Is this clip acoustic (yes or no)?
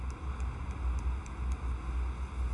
yes